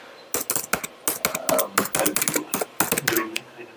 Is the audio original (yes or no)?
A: yes